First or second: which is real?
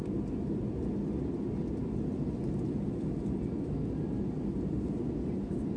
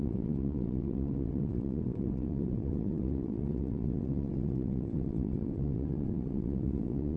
first